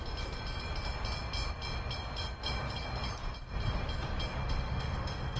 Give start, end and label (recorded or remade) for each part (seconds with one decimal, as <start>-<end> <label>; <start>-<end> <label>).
0.0-4.4 recorded; 4.4-5.4 remade